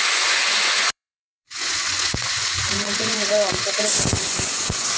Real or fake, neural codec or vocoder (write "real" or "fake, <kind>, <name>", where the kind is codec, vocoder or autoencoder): fake, vocoder, Vocos